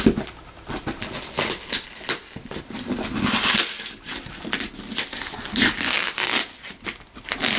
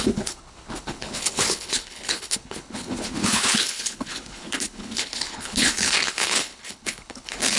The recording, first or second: first